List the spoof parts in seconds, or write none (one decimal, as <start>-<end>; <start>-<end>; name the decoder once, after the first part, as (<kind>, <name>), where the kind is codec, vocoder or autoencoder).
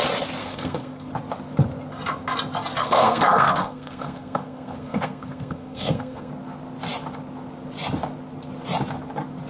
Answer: 0.4-1.1 (codec, SNAC); 2.8-6.3